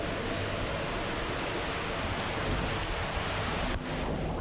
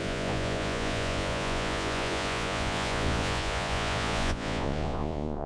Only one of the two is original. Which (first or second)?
first